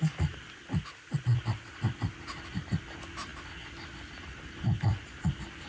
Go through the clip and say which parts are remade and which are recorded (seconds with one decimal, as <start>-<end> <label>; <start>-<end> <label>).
0.0-5.7 recorded